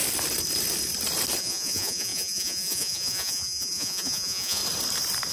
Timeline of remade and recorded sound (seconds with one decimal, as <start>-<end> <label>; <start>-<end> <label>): 0.0-1.4 recorded; 1.4-4.6 remade; 4.6-5.3 recorded